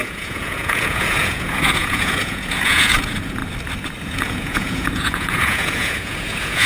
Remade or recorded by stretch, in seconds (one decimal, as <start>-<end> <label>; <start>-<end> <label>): 0.0-3.4 remade; 3.4-4.0 recorded; 4.0-6.7 remade

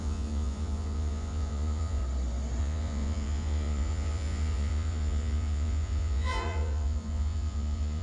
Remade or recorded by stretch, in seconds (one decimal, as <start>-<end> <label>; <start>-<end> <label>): 0.0-2.0 remade; 2.0-2.6 recorded; 2.6-8.0 remade

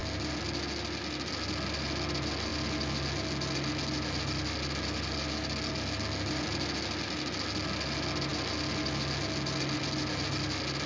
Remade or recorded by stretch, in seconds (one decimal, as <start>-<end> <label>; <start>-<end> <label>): 0.0-10.9 recorded

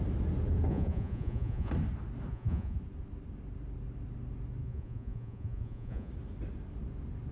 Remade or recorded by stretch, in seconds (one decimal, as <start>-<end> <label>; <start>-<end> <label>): 0.0-0.7 recorded; 0.7-1.7 remade; 1.7-2.3 recorded; 2.3-2.8 remade; 2.8-4.6 recorded; 4.6-6.1 remade; 6.1-7.3 recorded

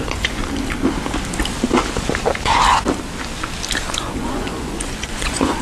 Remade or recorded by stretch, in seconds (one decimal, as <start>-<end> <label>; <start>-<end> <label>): 0.0-0.4 remade; 0.4-3.8 recorded; 3.8-5.6 remade

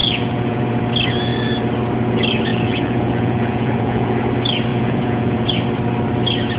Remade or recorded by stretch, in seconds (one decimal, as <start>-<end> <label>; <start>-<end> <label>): 0.0-0.6 remade; 0.6-2.5 recorded; 2.5-4.2 remade; 4.2-4.7 recorded; 4.7-5.5 remade; 5.5-6.6 recorded

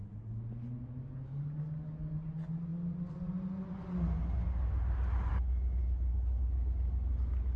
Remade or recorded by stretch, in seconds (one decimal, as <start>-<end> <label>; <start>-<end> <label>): 0.0-7.6 recorded

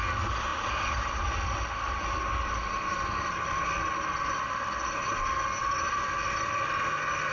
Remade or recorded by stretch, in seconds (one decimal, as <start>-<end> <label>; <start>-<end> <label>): 0.0-7.3 recorded